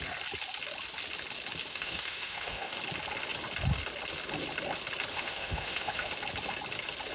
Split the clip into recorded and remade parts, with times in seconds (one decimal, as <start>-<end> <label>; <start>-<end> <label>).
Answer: 0.0-1.7 recorded; 1.7-2.8 remade; 2.8-5.1 recorded; 5.1-6.1 remade; 6.1-7.1 recorded